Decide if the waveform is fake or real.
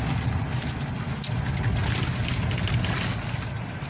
real